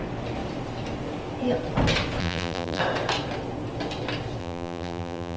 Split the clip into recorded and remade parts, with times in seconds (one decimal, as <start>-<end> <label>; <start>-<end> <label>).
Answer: 0.0-2.2 recorded; 2.2-2.8 remade; 2.8-4.4 recorded; 4.4-5.4 remade